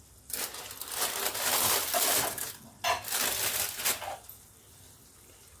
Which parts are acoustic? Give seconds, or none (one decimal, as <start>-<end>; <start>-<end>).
0.0-5.6